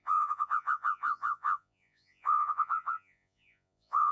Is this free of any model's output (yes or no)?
no